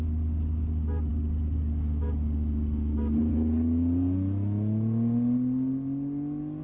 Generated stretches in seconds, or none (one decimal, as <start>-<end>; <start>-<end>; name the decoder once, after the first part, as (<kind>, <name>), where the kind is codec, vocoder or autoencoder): none